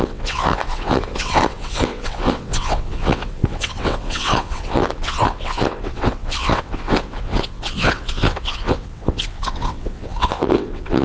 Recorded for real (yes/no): no